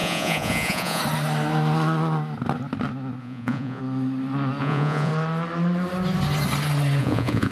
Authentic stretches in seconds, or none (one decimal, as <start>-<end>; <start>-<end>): 1.0-3.2; 3.8-4.6; 5.1-7.0